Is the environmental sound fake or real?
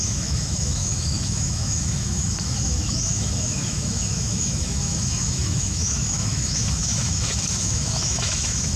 fake